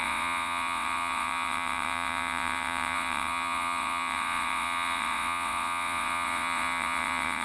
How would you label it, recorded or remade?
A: remade